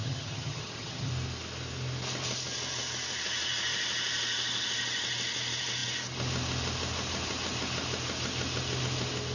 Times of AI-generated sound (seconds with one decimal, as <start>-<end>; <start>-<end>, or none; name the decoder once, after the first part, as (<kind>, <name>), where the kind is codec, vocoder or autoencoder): 0.0-1.1 (vocoder, HiFi-GAN)